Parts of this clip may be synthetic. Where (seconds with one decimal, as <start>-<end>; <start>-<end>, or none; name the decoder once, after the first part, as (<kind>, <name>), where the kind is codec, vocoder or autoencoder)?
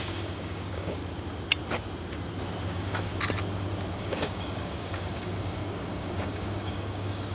0.0-1.0 (codec, DAC); 2.7-3.1; 4.0-7.3